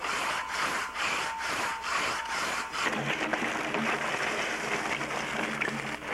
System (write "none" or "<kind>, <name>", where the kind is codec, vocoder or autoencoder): none